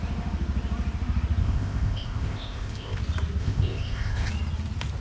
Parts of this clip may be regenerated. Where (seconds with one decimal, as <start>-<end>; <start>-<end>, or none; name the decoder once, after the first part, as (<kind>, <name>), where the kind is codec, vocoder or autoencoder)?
1.4-3.0 (codec, ZipCodec); 3.4-4.3